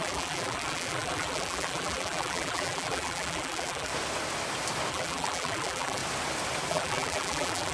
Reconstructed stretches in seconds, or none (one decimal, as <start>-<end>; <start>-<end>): 0.0-3.9; 4.9-6.0; 6.7-7.7